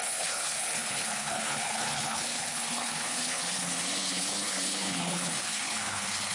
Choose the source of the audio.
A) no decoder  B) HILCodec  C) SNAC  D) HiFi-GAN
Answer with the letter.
B